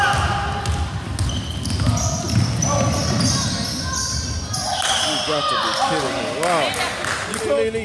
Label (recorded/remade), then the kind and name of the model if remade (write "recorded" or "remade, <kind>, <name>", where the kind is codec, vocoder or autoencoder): recorded